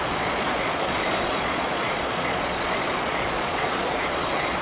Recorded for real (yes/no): no